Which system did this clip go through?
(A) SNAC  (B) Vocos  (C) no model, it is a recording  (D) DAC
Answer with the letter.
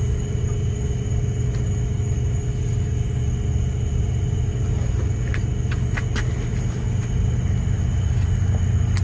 C